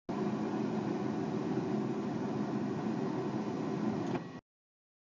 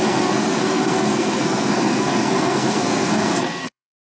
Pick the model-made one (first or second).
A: second